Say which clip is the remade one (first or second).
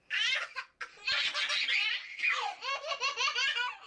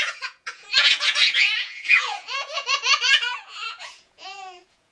second